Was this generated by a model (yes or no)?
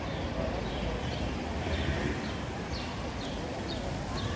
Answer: yes